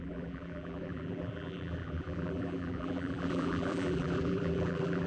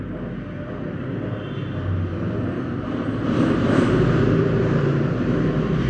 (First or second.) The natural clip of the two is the second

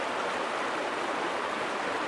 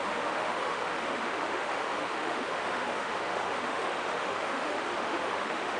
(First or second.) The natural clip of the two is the first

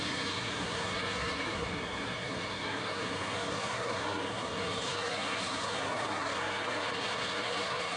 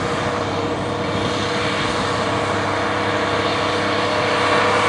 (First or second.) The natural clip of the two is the second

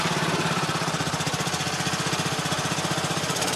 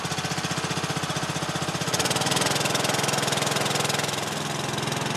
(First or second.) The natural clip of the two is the second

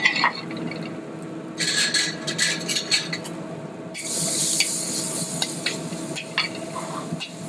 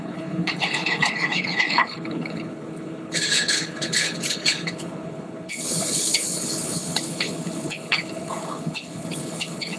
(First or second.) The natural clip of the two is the first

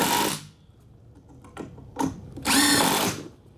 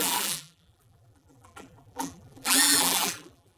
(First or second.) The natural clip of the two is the first